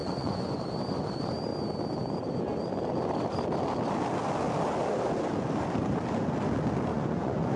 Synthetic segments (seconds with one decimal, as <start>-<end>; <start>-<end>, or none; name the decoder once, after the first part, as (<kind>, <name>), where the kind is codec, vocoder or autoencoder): 0.0-0.6 (vocoder, Vocos); 6.9-7.6